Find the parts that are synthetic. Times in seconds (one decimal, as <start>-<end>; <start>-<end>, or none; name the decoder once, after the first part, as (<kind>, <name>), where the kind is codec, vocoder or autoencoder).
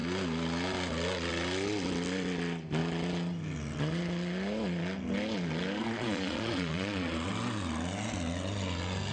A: 5.8-7.3 (vocoder, Vocos)